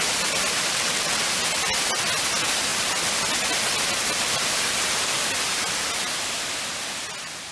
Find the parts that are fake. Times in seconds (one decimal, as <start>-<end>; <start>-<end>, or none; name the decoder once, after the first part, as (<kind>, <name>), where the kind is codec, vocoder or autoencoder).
0.7-1.2 (vocoder, WaveNeXt)

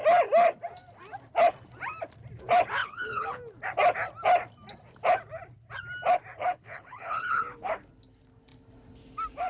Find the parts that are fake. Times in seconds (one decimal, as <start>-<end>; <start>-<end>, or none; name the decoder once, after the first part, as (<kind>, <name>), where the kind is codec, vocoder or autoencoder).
2.8-3.4 (codec, HILCodec); 6.4-7.8

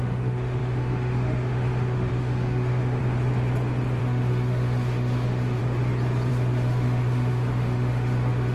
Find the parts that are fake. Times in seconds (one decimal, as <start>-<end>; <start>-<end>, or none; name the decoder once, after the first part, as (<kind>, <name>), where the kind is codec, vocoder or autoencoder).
0.0-3.0 (autoencoder, DAC-VAE); 4.0-5.6; 6.3-8.5

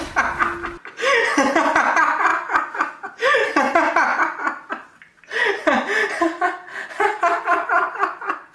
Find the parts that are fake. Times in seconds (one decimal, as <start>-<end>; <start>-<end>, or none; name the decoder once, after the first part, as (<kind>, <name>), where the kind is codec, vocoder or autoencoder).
none

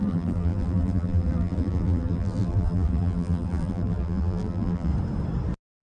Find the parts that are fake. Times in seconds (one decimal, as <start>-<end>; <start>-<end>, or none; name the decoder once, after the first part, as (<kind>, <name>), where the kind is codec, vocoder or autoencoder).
0.0-4.9 (vocoder, BigVGAN v2)